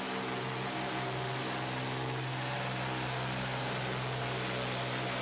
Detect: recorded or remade recorded